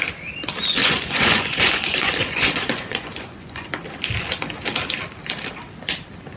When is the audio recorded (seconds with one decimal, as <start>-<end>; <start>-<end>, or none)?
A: 0.0-0.8; 3.7-6.4